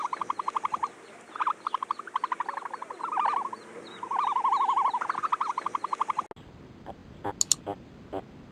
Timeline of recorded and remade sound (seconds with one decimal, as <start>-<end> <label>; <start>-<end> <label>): 0.0-8.5 recorded